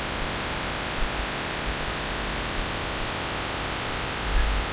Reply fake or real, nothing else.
real